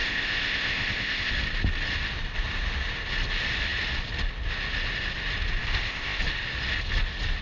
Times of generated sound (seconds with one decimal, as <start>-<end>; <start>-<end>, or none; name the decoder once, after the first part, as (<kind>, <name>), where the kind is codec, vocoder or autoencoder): 0.0-1.3 (codec, ZipCodec); 5.6-6.2